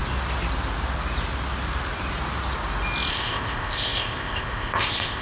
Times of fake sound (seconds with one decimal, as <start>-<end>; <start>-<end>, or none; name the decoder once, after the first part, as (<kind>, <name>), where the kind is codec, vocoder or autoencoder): 3.1-5.2 (codec, ZipCodec)